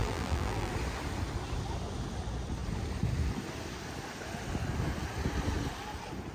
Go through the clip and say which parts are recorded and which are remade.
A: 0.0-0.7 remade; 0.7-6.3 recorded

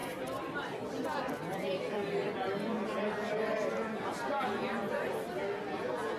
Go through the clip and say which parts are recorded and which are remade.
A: 0.0-6.2 remade

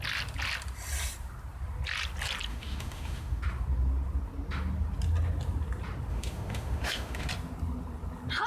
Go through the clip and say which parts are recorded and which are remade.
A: 0.0-2.5 recorded; 2.5-3.4 remade; 3.4-6.1 recorded; 6.1-7.3 remade; 7.3-8.5 recorded

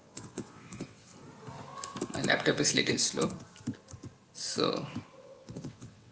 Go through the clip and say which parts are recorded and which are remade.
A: 0.0-1.1 remade; 1.1-2.3 recorded; 2.3-2.9 remade; 2.9-5.2 recorded; 5.2-6.1 remade